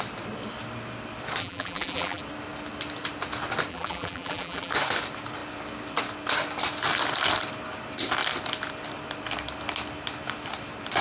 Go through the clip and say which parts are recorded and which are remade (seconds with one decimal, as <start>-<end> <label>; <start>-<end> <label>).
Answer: 0.0-1.4 recorded; 1.4-2.2 remade; 2.2-3.7 recorded; 3.7-4.7 remade; 4.7-11.0 recorded